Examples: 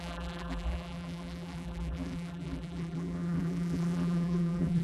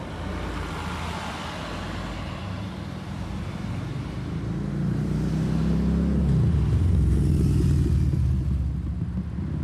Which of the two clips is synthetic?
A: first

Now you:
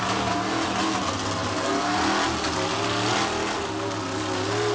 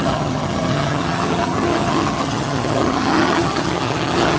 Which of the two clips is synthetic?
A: second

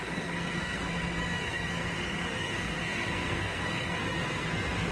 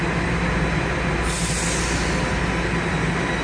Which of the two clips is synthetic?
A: first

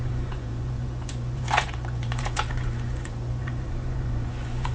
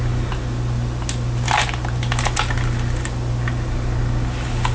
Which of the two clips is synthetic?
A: first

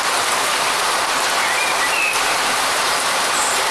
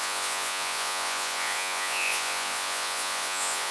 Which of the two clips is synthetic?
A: second